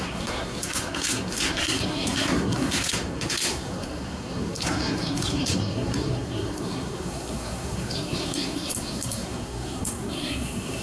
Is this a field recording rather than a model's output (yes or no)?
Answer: no